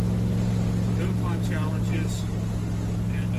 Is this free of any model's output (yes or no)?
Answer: yes